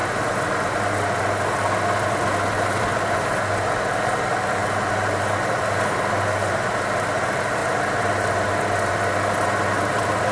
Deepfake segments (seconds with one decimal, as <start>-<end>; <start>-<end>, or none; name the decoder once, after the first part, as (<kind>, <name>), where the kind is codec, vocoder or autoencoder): 0.0-0.7 (vocoder, BigVGAN v2); 7.6-8.5